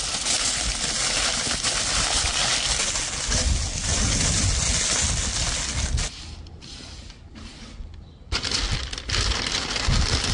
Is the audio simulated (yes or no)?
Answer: no